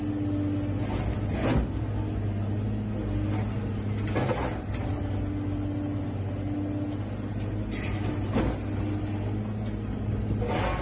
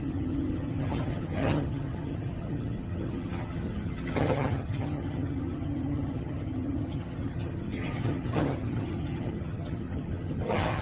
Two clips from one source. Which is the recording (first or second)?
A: first